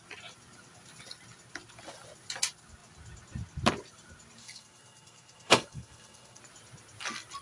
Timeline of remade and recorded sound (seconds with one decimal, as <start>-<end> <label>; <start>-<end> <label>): 0.0-4.4 recorded; 4.4-6.4 remade; 6.4-7.4 recorded